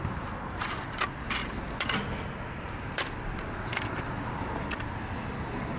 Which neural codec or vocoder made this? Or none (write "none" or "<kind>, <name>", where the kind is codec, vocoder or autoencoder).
none